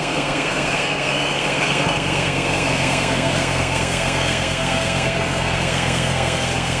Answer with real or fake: fake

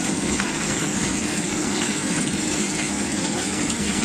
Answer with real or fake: fake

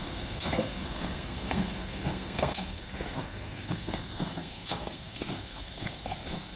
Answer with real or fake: fake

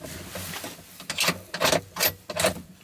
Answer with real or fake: real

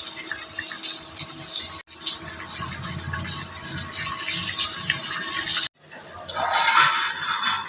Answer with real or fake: real